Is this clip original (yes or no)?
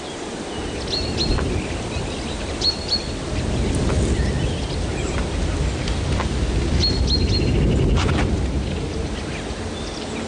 yes